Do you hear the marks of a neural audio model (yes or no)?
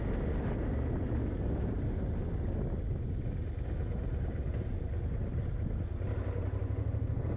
no